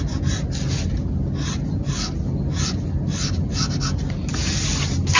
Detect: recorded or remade recorded